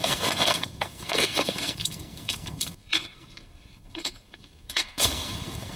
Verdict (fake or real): fake